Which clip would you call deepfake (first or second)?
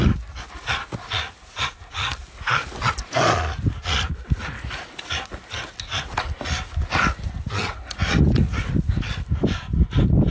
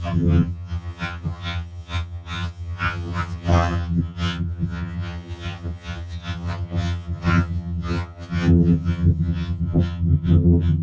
second